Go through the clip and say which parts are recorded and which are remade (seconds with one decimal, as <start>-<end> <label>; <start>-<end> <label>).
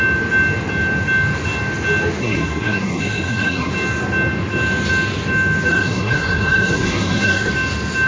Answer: 0.0-2.2 recorded; 2.2-3.7 remade; 3.7-5.7 recorded; 5.7-7.5 remade; 7.5-8.1 recorded